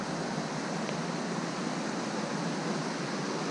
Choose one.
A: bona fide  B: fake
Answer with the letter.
A